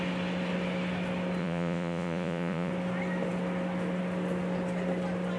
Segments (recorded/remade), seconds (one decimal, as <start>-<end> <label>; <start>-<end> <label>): 0.0-1.4 recorded; 1.4-2.7 remade; 2.7-5.4 recorded